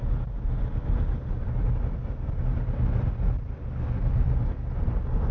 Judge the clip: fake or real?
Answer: real